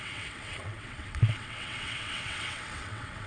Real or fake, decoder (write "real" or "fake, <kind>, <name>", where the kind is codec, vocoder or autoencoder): fake, vocoder, WaveNeXt